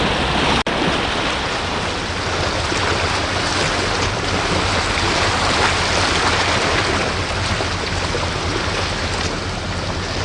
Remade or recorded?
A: recorded